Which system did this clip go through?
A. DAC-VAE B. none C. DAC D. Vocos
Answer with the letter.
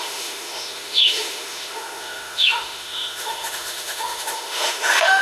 A